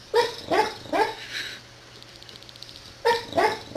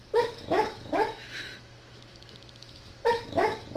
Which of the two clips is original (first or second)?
first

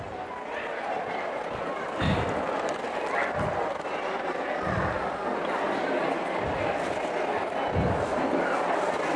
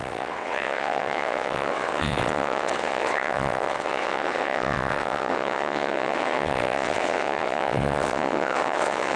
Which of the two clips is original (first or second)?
first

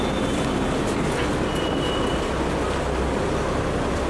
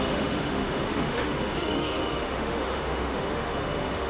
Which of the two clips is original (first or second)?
first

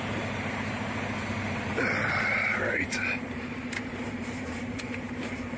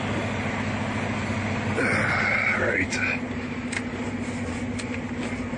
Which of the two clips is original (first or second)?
second